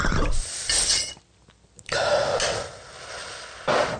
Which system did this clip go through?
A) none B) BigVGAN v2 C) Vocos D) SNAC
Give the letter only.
A